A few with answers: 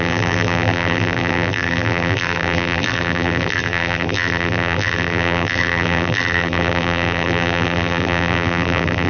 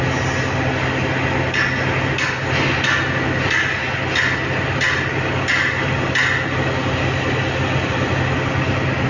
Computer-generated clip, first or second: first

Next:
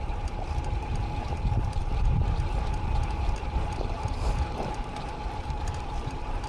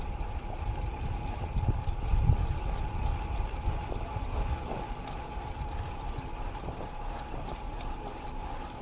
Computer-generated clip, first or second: first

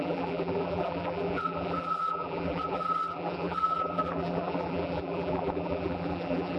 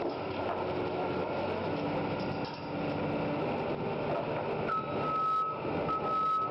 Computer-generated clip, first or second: first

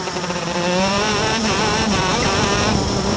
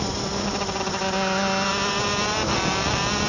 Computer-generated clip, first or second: first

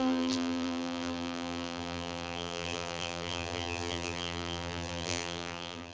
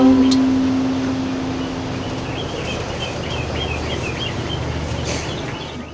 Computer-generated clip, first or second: first